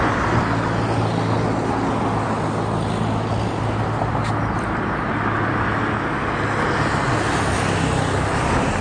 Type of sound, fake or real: real